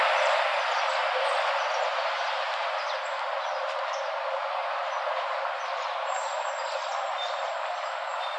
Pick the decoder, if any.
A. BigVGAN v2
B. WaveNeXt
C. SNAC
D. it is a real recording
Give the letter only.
D